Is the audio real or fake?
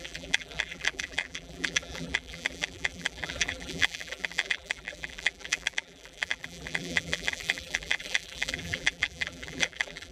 fake